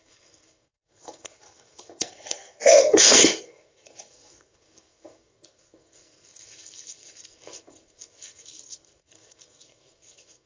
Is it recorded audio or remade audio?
remade